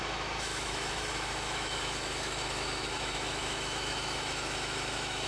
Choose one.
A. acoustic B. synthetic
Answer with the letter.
B